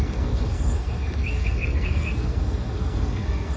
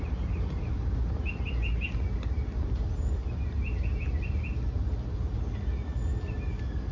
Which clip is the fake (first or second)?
first